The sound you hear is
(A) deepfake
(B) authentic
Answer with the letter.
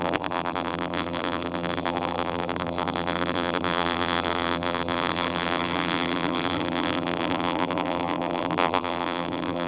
A